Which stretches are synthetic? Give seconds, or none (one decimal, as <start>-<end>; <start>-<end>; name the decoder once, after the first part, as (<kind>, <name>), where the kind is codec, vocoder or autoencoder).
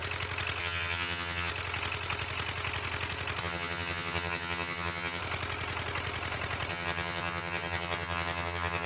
0.6-1.5 (vocoder, HiFi-GAN); 3.4-5.2; 6.7-8.9